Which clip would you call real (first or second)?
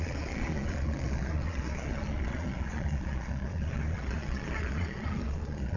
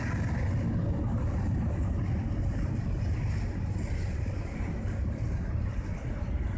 second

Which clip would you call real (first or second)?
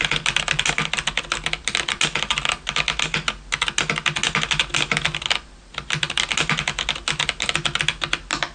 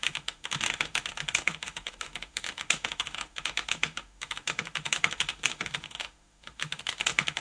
first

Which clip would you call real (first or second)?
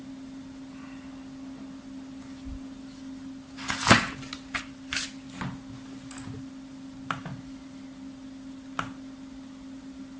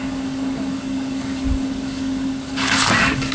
first